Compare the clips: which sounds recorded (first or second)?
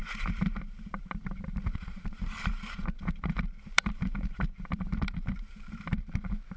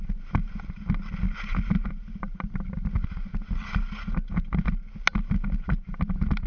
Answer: second